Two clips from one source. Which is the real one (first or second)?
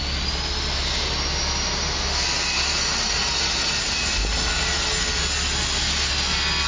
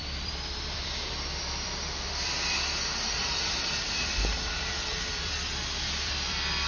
first